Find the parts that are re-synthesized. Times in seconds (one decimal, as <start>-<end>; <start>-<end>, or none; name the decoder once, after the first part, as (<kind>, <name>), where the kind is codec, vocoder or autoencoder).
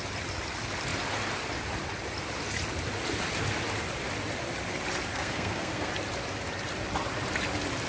5.1-5.9 (codec, SNAC)